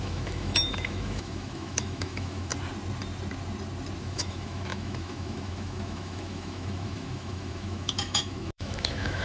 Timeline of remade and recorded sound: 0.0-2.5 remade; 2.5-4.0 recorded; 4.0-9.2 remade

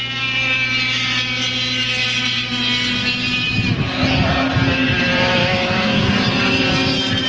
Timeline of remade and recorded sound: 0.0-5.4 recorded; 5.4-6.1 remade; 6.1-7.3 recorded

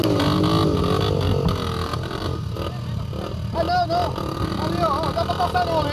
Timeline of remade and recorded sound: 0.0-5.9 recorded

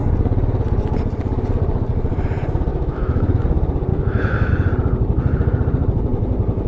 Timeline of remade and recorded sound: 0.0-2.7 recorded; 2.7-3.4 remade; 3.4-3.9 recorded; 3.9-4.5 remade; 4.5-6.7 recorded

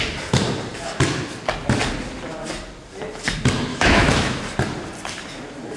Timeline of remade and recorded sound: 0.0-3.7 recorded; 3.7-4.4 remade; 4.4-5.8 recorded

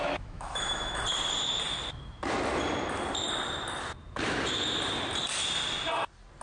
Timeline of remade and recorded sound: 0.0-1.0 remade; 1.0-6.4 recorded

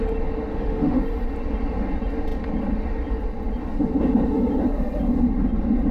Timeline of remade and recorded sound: 0.0-0.5 recorded; 0.5-1.0 remade; 1.0-5.9 recorded

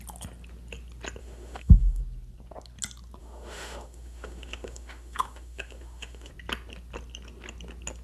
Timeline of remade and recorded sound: 0.0-1.2 recorded; 1.2-2.0 remade; 2.0-3.2 recorded; 3.2-6.3 remade; 6.3-8.0 recorded